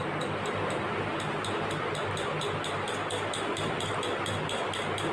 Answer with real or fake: real